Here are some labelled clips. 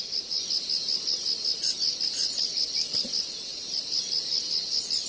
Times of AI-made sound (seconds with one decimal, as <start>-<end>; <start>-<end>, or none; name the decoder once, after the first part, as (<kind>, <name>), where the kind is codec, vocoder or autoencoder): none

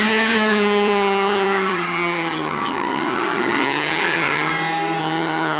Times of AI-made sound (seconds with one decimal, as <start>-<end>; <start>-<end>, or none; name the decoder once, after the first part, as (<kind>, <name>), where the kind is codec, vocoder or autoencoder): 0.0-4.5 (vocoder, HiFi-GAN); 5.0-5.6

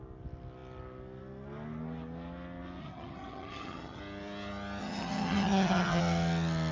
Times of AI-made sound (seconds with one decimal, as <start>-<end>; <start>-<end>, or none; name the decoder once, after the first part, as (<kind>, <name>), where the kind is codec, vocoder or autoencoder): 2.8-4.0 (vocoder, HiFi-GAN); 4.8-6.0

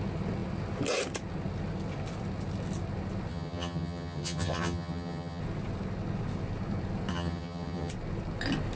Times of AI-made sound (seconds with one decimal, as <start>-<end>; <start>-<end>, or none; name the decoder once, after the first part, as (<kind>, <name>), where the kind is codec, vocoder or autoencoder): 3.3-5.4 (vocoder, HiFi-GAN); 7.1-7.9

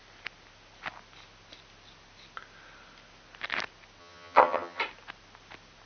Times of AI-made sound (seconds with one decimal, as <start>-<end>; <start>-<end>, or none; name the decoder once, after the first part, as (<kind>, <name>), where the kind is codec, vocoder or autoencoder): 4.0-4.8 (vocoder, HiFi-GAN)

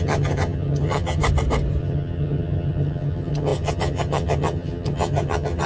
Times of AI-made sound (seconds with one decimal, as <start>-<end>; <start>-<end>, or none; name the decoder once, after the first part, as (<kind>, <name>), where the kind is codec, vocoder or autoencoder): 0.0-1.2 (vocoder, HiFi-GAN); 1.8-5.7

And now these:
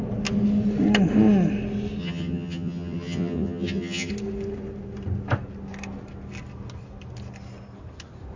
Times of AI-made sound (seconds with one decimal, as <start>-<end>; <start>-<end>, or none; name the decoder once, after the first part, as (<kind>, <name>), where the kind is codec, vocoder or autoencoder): 2.0-4.1 (vocoder, HiFi-GAN)